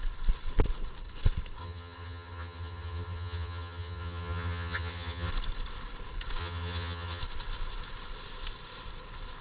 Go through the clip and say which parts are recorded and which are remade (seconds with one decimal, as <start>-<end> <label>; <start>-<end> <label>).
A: 0.0-1.6 recorded; 1.6-5.3 remade; 5.3-6.4 recorded; 6.4-7.2 remade; 7.2-9.4 recorded